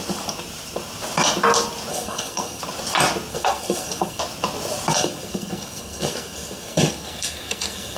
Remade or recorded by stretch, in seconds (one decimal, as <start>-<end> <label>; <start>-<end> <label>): 0.0-1.9 recorded; 1.9-2.6 remade; 2.6-3.3 recorded; 3.3-4.2 remade; 4.2-4.9 recorded; 4.9-8.0 remade

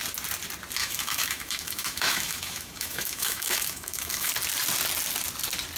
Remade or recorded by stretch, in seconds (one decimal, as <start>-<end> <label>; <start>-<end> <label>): 0.0-0.8 recorded; 0.8-4.3 remade; 4.3-5.8 recorded

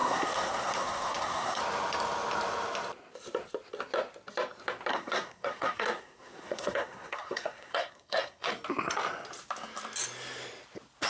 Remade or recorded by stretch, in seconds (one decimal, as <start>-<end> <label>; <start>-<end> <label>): 0.0-1.6 remade; 1.6-4.9 recorded; 4.9-8.5 remade; 8.5-11.1 recorded

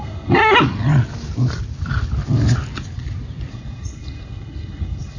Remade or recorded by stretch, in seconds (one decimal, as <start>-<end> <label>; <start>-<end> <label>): 0.0-0.4 remade; 0.4-3.5 recorded; 3.5-5.2 remade